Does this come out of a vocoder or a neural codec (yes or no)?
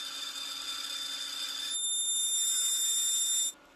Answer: no